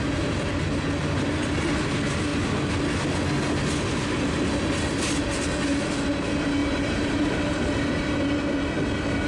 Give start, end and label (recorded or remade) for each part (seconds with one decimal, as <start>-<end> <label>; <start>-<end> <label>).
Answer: 0.0-6.6 recorded; 6.6-8.1 remade; 8.1-9.3 recorded